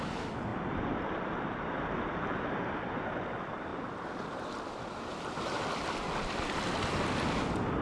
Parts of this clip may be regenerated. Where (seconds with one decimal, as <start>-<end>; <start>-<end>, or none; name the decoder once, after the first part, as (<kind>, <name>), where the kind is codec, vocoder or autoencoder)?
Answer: 0.5-2.4 (vocoder, BigVGAN v2); 3.7-5.2